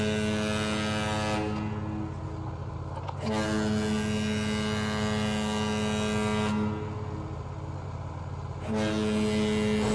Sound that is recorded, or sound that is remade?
recorded